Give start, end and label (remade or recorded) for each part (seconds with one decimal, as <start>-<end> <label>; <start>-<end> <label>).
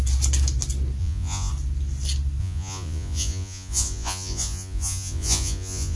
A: 0.0-1.0 recorded; 1.0-1.5 remade; 1.5-2.4 recorded; 2.4-6.0 remade